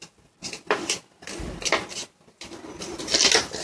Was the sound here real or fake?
real